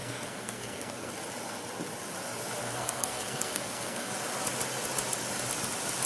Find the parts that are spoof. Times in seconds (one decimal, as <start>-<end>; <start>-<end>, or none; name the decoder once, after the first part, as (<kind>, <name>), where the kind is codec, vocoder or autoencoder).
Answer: 0.0-1.1 (codec, SNAC); 2.6-4.1